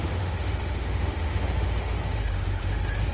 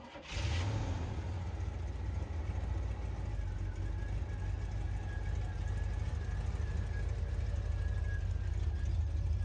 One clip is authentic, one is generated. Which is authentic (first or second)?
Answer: second